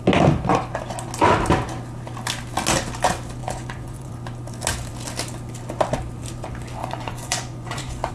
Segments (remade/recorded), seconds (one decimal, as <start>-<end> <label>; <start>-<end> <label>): 0.0-3.4 recorded; 3.4-4.1 remade; 4.1-6.8 recorded; 6.8-8.1 remade